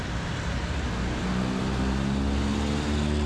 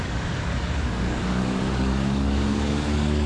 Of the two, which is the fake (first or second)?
second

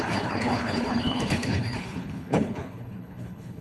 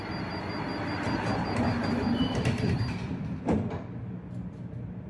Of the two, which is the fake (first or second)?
first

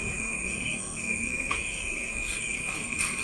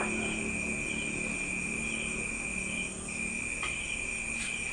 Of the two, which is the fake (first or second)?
first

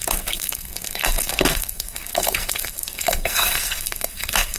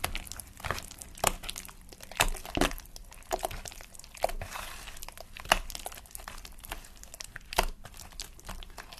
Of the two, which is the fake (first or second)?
first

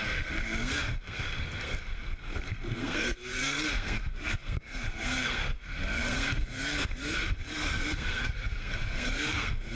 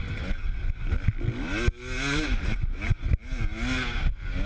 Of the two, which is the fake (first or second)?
first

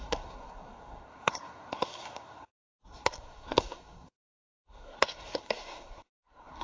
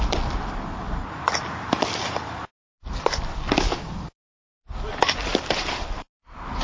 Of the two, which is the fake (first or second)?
first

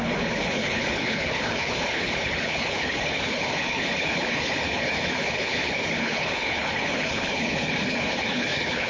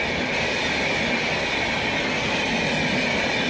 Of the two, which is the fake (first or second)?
first